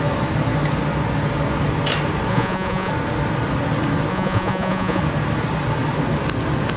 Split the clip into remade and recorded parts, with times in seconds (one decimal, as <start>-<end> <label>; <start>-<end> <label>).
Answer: 0.0-2.3 recorded; 2.3-2.9 remade; 2.9-4.1 recorded; 4.1-5.0 remade; 5.0-6.8 recorded